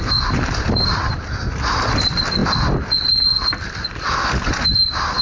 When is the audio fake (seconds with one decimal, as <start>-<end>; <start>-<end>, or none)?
none